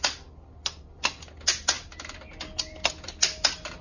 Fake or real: real